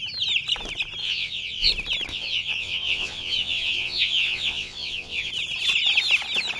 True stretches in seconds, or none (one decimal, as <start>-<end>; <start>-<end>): 0.0-1.0; 1.7-2.1; 5.3-6.6